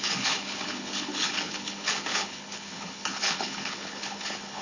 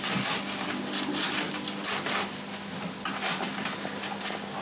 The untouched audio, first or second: second